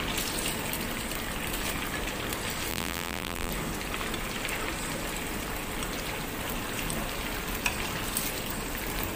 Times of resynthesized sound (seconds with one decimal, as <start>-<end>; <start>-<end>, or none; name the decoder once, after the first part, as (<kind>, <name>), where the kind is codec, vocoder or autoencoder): 2.7-3.5 (vocoder, BigVGAN v2)